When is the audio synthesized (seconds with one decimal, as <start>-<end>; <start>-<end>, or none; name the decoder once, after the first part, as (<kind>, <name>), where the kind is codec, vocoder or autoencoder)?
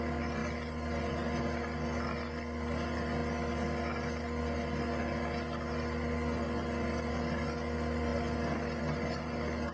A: none